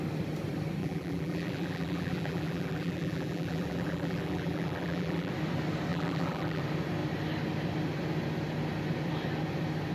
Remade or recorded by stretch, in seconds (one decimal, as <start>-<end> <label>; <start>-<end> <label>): 0.0-0.8 recorded; 0.8-5.3 remade; 5.3-5.9 recorded; 5.9-6.6 remade; 6.6-9.9 recorded